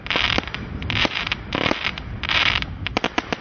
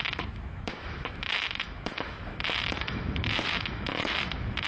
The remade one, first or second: second